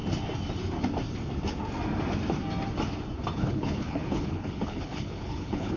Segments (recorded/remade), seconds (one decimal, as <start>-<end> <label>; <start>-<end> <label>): 0.0-3.3 recorded; 3.3-5.8 remade